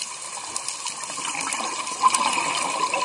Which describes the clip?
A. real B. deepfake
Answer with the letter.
A